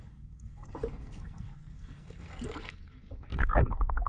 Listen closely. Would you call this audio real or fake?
fake